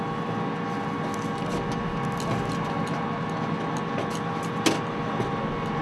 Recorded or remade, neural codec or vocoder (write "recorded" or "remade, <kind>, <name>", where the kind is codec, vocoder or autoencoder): recorded